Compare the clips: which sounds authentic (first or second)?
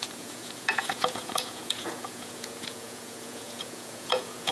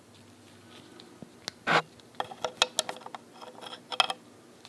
second